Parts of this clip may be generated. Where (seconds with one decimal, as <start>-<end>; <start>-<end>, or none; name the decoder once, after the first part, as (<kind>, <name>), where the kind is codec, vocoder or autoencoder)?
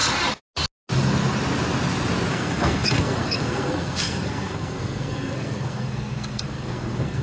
2.3-7.2 (codec, SNAC)